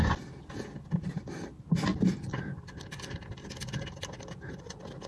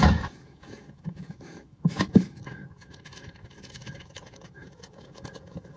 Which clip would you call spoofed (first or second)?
second